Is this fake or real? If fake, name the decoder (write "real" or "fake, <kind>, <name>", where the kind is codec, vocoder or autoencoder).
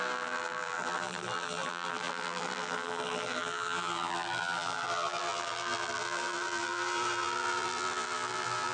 fake, vocoder, BigVGAN v2